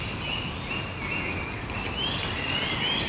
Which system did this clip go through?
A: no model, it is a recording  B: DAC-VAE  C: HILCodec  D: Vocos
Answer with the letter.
A